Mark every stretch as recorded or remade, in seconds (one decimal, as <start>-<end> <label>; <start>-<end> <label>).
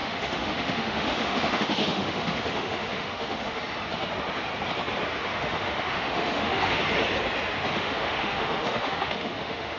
0.0-3.6 remade; 3.6-5.3 recorded; 5.3-6.8 remade; 6.8-7.7 recorded; 7.7-9.8 remade